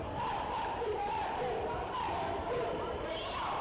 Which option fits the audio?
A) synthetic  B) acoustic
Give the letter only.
A